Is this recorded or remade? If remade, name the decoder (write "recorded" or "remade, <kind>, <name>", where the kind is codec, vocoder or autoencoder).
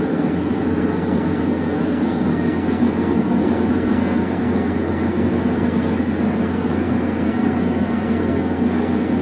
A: remade, codec, SNAC